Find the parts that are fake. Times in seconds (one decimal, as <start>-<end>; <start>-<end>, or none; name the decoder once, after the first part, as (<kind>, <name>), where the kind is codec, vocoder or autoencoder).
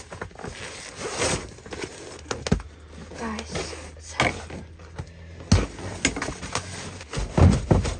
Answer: none